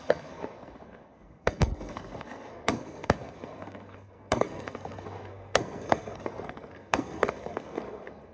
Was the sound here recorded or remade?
remade